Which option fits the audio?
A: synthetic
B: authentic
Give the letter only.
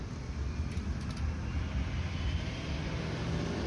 B